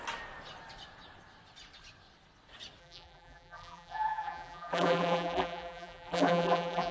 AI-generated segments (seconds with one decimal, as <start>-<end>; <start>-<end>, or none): 2.8-6.9